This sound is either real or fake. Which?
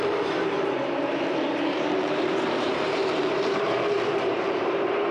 fake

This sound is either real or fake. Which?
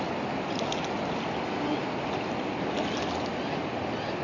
real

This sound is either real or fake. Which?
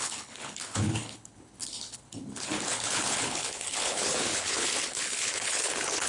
fake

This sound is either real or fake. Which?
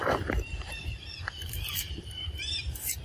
fake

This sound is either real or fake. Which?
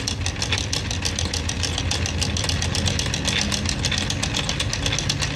real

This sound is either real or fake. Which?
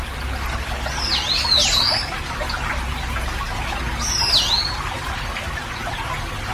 real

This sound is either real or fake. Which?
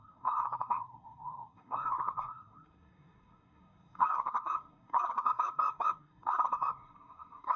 fake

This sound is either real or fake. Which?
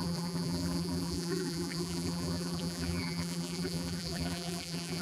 fake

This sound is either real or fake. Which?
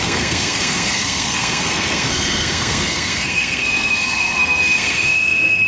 fake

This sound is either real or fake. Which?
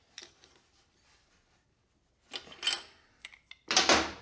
real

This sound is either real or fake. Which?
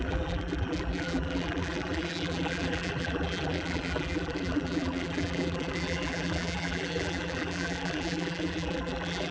fake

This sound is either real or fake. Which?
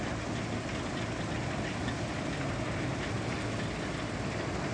real